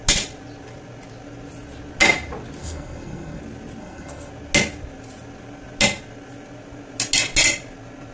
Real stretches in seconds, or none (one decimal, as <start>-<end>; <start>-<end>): 0.0-2.6; 3.4-3.8; 4.3-8.1